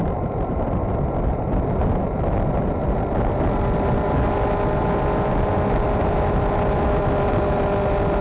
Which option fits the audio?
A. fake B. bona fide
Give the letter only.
B